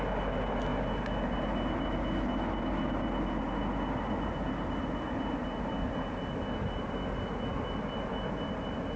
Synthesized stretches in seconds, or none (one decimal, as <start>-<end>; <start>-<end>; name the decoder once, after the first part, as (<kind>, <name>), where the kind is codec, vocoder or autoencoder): none